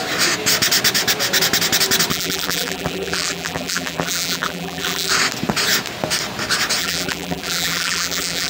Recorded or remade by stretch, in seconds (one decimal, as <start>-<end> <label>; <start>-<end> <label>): 0.0-2.1 recorded; 2.1-5.1 remade; 5.1-6.8 recorded; 6.8-8.5 remade